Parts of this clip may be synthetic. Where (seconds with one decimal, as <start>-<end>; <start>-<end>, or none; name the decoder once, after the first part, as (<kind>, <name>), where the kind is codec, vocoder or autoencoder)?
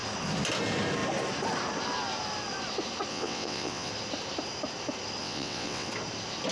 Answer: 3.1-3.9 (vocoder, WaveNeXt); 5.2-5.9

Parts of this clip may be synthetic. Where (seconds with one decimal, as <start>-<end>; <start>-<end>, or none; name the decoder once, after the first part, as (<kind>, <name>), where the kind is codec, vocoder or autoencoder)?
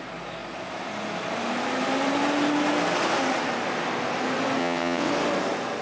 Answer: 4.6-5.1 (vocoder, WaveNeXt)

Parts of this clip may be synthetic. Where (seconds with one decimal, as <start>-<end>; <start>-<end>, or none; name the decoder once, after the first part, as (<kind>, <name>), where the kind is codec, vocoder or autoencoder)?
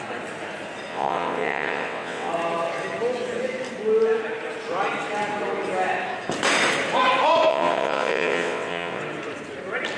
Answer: 0.9-2.3 (vocoder, WaveNeXt); 7.5-9.0